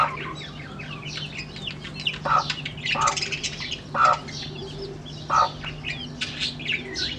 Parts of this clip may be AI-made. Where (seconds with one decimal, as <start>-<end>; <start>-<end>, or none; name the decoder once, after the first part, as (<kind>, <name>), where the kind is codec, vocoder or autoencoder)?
none